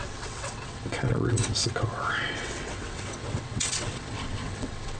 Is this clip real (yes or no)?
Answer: no